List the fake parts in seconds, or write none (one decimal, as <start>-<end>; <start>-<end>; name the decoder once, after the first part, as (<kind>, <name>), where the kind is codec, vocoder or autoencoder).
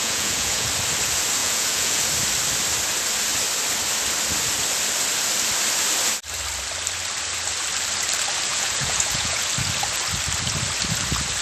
0.0-0.7 (vocoder, Vocos); 1.4-2.0; 8.5-9.5